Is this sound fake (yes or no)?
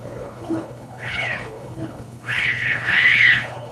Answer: yes